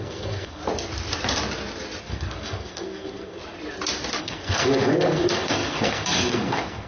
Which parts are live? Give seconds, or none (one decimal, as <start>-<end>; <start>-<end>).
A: 0.6-2.0; 3.4-4.2